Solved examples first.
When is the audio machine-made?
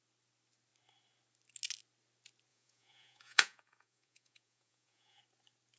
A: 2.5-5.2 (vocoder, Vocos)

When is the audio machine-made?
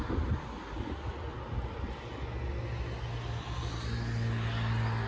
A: none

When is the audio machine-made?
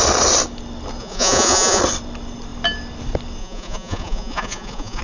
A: 1.0-1.8 (vocoder, Vocos); 3.4-5.0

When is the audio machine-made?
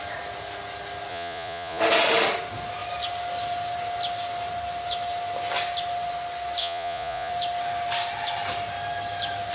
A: 1.1-1.8 (vocoder, Vocos); 6.6-7.3